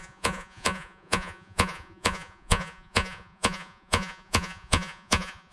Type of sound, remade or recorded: remade